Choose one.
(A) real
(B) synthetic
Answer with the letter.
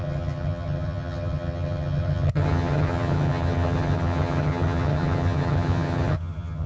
B